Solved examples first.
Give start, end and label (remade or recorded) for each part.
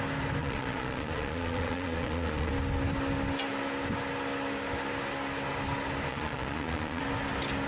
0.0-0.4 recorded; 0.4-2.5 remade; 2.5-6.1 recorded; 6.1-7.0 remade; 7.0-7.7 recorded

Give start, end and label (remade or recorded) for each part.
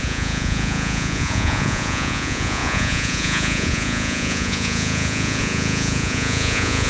0.0-6.9 remade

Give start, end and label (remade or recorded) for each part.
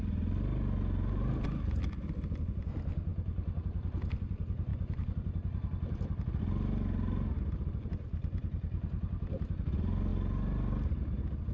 0.0-11.5 recorded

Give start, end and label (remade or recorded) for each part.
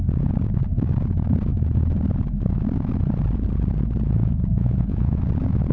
0.0-4.2 recorded; 4.2-5.2 remade; 5.2-5.7 recorded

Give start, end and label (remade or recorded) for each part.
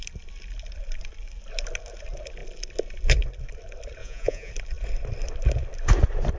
0.0-4.0 recorded; 4.0-4.5 remade; 4.5-6.4 recorded